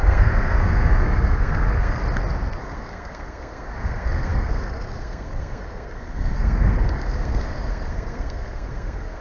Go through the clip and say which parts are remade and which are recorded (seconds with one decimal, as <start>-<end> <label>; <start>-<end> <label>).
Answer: 0.0-2.0 remade; 2.0-2.6 recorded; 2.6-9.2 remade